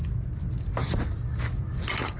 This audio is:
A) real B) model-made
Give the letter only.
A